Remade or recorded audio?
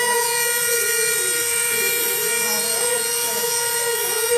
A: remade